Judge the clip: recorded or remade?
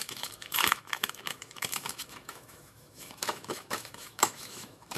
remade